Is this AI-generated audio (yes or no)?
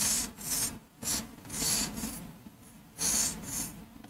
no